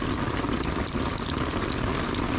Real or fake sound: real